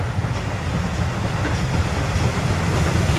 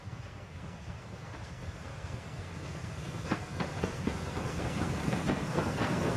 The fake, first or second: second